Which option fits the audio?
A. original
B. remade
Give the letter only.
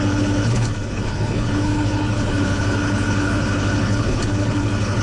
B